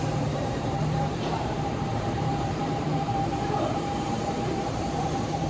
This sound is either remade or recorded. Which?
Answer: remade